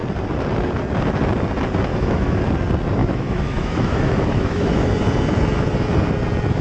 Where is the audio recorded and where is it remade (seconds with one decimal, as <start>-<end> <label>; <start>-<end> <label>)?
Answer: 0.0-1.9 recorded; 1.9-2.4 remade; 2.4-3.0 recorded; 3.0-4.9 remade; 4.9-6.6 recorded